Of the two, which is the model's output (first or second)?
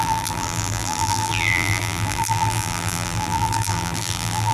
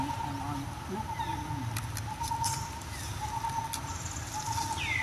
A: first